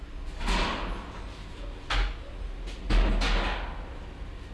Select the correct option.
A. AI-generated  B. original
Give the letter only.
B